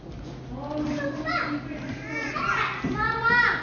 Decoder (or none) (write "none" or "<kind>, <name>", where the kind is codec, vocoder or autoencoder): none